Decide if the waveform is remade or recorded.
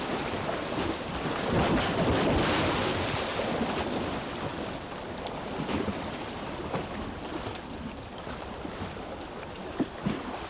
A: recorded